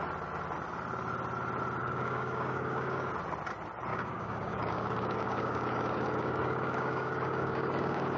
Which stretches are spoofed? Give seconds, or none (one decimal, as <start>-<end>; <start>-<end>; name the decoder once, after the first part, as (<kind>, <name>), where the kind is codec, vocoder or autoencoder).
1.8-3.1 (codec, DAC); 3.9-8.2